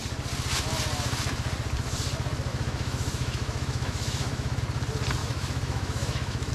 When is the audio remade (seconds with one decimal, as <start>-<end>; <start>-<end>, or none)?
2.5-4.6; 5.2-6.5